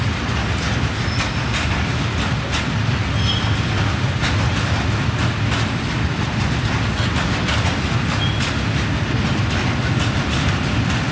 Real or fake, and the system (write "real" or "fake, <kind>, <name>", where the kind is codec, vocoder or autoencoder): real